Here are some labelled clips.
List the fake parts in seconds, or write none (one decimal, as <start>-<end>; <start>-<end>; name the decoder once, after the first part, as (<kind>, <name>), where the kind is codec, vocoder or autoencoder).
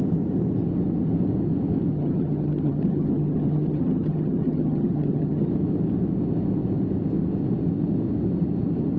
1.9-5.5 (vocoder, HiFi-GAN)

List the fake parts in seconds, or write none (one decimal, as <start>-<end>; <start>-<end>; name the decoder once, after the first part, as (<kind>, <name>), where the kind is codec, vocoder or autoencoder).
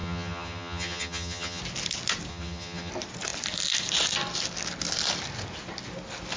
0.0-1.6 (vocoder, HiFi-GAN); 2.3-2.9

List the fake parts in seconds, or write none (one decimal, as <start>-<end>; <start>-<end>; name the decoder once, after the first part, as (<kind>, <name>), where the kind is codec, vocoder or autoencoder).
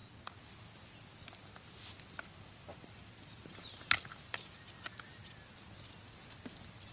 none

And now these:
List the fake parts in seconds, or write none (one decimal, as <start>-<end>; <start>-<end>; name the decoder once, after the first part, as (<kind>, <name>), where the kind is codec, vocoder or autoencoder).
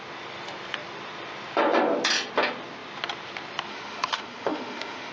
3.7-5.1 (autoencoder, DAC-VAE)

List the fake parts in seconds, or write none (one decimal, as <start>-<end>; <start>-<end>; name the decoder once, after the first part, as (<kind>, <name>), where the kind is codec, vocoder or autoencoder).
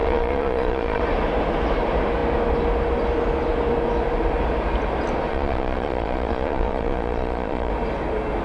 0.0-1.0 (vocoder, Vocos); 5.3-7.7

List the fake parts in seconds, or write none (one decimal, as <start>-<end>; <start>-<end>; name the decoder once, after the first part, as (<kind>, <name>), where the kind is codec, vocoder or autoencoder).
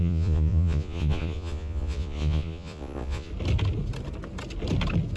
0.0-3.3 (vocoder, Vocos)